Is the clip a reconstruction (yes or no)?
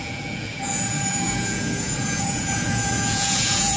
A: yes